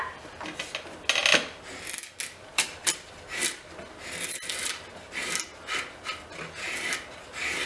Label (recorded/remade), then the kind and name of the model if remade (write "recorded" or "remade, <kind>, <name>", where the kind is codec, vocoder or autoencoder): recorded